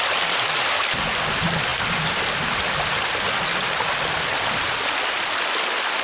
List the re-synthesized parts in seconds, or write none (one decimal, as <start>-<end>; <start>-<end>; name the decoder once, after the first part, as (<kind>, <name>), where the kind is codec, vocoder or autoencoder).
none